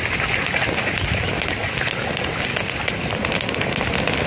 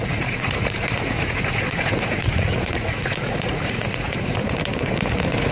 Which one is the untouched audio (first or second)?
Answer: first